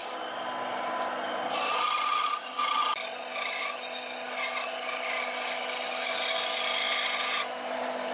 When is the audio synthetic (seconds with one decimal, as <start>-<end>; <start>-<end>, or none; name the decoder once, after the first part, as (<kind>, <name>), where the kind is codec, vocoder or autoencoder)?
none